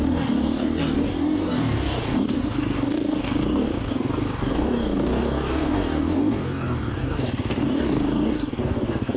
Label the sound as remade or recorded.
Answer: remade